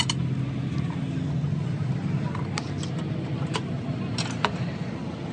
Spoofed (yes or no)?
no